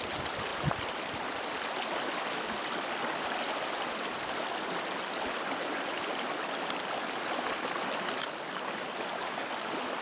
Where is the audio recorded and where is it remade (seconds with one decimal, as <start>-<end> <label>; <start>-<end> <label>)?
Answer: 0.0-10.0 recorded